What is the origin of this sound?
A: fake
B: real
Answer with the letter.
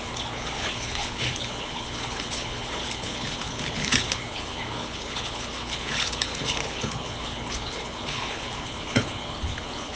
A